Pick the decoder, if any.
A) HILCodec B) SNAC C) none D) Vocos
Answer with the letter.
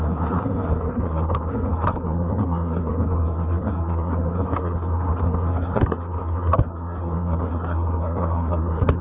B